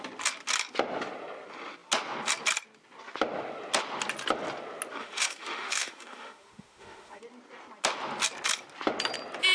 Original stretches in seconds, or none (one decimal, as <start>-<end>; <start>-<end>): 0.0-5.0; 7.2-9.5